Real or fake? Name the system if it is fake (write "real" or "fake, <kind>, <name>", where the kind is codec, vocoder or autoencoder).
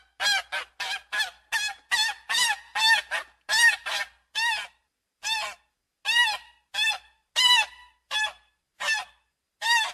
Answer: real